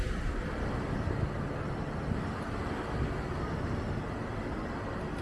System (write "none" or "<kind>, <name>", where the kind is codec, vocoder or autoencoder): none